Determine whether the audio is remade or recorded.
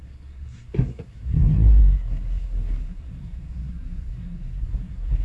remade